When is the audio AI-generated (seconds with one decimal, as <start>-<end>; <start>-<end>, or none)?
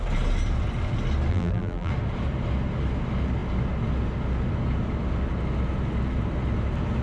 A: 1.3-1.9